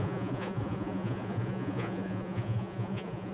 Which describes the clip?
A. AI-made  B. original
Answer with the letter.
A